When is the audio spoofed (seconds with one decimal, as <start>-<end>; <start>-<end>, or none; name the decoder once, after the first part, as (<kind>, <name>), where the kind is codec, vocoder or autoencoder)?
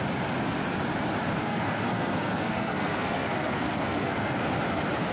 1.4-4.4 (codec, SNAC)